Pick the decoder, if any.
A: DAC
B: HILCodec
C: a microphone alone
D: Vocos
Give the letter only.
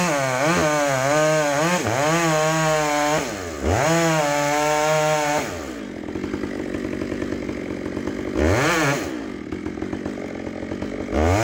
C